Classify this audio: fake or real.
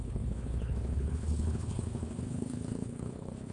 fake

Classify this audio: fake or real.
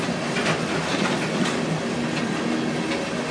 real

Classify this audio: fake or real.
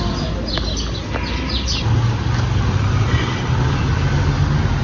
real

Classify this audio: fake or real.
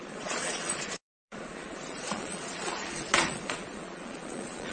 fake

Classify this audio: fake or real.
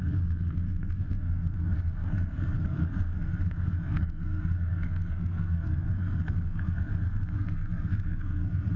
fake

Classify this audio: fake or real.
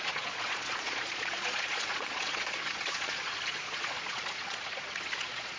fake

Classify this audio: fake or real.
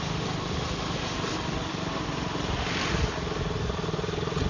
fake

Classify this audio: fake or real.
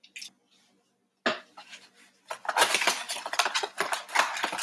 real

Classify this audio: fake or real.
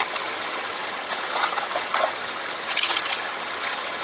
fake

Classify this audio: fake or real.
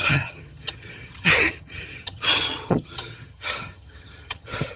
fake